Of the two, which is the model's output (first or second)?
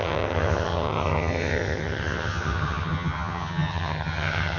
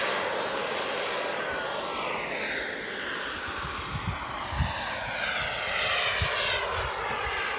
first